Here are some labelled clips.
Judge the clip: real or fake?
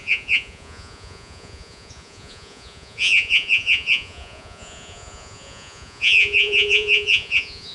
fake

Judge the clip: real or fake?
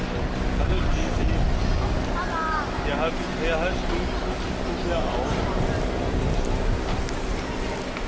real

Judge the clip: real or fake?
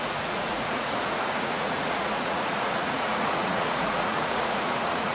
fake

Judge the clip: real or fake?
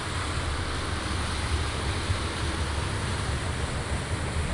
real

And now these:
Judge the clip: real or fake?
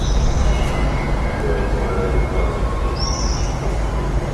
real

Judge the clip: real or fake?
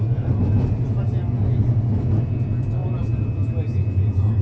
real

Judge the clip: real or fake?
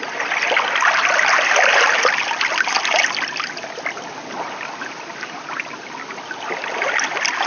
real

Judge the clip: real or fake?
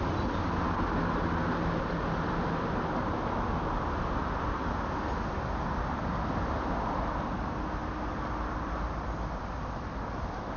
real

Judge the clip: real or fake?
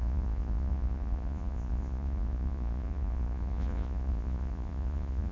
fake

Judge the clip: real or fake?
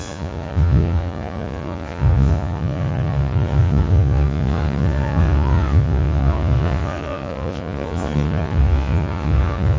fake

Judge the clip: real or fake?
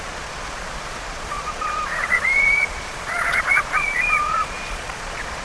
fake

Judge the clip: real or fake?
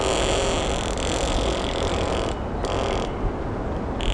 real